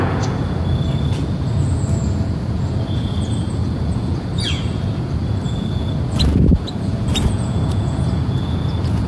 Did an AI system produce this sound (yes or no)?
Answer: yes